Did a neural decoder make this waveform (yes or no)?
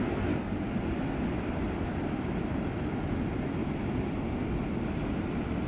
no